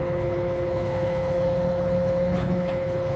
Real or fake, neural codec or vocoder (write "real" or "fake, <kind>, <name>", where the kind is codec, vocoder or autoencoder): fake, codec, HILCodec